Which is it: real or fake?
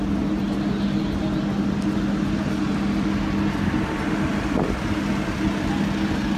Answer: real